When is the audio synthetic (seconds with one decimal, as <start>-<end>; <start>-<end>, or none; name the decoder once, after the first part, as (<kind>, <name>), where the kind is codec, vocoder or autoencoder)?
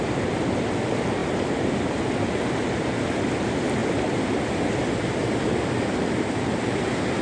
none